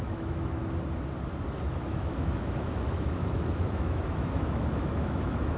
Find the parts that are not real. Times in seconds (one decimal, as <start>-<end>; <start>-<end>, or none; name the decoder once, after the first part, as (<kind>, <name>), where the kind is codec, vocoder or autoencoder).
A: 0.0-0.6 (autoencoder, DAC-VAE); 1.7-5.6